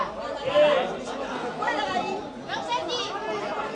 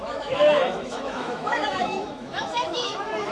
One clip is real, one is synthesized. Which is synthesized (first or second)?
second